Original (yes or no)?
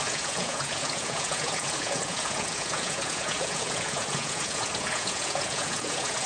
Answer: no